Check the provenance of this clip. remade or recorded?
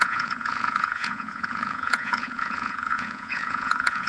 remade